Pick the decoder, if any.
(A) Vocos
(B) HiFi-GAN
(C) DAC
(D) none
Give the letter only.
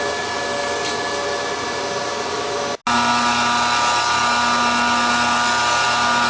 D